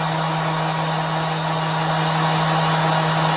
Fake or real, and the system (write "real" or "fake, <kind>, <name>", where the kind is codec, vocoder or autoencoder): real